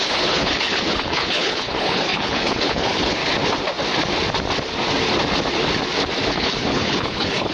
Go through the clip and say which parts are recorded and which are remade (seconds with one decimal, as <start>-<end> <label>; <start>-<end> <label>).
0.0-3.2 remade; 3.2-6.3 recorded; 6.3-7.5 remade